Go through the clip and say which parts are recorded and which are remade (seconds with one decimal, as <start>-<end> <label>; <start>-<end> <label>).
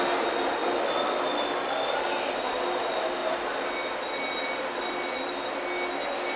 0.0-6.4 recorded